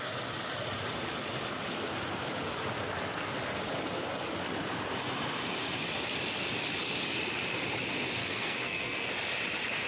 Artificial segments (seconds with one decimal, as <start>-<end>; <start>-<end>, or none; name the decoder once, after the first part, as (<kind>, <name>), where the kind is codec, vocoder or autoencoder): 8.2-9.1 (codec, SNAC)